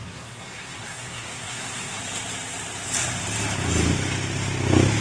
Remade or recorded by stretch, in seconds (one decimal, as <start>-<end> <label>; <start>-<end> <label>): 0.0-2.0 remade; 2.0-5.0 recorded